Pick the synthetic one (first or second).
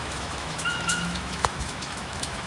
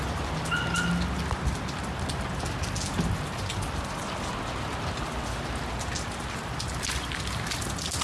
first